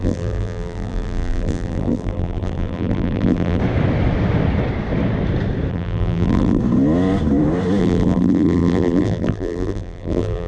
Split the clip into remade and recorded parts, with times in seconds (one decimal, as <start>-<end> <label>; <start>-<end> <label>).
0.0-3.6 remade; 3.6-5.7 recorded; 5.7-6.6 remade; 6.6-7.8 recorded; 7.8-10.5 remade

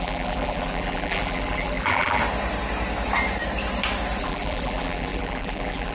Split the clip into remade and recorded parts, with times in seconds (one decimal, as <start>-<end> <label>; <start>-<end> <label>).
0.0-2.2 remade; 2.2-4.2 recorded; 4.2-5.9 remade

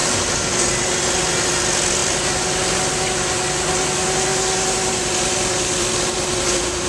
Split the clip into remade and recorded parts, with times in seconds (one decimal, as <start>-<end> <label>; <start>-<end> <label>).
0.0-0.7 remade; 0.7-2.0 recorded; 2.0-2.6 remade; 2.6-6.9 recorded

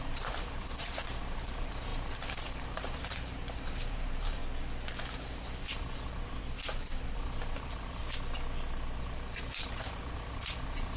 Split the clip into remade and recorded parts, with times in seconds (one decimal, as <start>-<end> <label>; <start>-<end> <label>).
0.0-4.4 remade; 4.4-5.0 recorded; 5.0-8.0 remade; 8.0-9.0 recorded; 9.0-11.0 remade

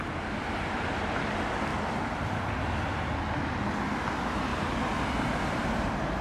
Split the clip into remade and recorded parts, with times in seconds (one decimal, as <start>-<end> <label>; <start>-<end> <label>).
0.0-1.7 recorded; 1.7-2.5 remade; 2.5-4.5 recorded; 4.5-5.7 remade; 5.7-6.2 recorded

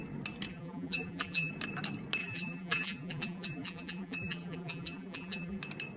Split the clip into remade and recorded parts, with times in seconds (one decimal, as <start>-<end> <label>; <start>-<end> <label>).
0.0-0.5 recorded; 0.5-1.5 remade; 1.5-2.2 recorded; 2.2-5.6 remade; 5.6-6.0 recorded